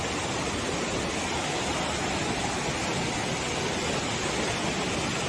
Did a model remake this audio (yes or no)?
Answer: no